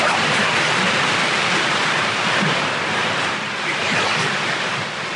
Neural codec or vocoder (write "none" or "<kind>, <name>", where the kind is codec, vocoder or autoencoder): vocoder, BigVGAN v2